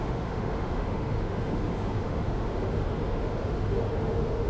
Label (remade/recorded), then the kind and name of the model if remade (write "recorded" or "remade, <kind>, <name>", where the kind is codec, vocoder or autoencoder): remade, autoencoder, DAC-VAE